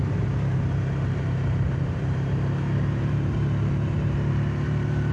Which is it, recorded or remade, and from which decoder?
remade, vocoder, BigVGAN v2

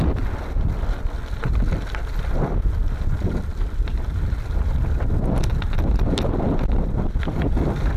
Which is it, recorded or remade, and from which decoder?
recorded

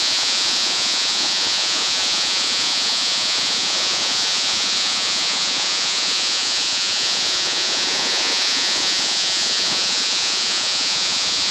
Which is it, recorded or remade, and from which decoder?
remade, vocoder, Vocos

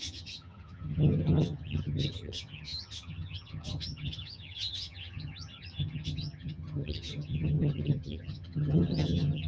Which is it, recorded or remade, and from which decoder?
remade, vocoder, HiFi-GAN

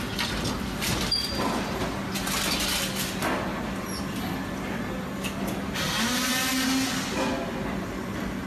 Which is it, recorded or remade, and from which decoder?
recorded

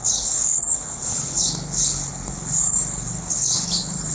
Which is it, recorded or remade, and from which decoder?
remade, codec, HILCodec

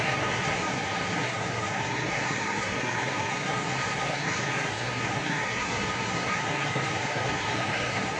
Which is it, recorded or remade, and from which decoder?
remade, codec, SNAC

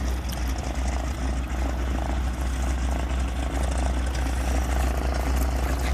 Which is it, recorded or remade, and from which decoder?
recorded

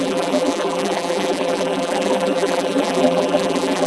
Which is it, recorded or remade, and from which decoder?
remade, vocoder, BigVGAN v2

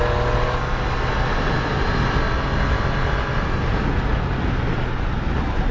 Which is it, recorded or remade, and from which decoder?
recorded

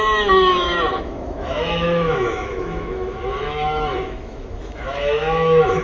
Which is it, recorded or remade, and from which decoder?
remade, autoencoder, DAC-VAE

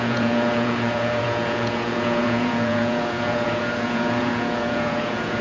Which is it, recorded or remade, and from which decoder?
remade, vocoder, Vocos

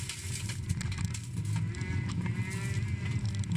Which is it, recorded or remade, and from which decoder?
recorded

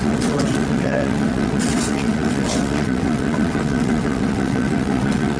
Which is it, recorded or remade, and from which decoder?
remade, vocoder, WaveNeXt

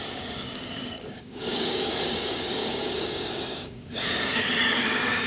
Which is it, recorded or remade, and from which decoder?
remade, codec, DAC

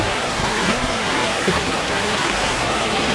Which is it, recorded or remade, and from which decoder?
remade, codec, SNAC